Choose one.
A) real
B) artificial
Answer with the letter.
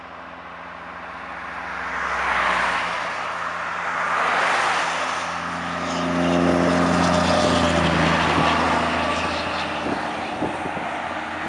A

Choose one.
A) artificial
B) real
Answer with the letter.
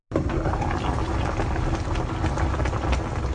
B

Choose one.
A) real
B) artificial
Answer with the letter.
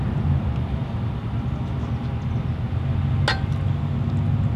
A